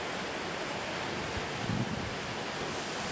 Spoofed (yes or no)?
no